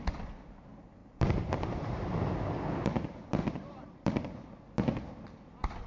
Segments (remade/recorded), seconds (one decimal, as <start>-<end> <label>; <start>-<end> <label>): 0.0-1.0 recorded; 1.0-2.0 remade; 2.0-3.4 recorded; 3.4-4.6 remade; 4.6-5.9 recorded